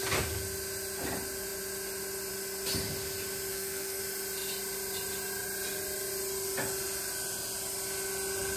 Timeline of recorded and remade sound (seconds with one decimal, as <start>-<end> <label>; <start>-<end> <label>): 0.0-3.5 recorded; 3.5-4.0 remade; 4.0-8.6 recorded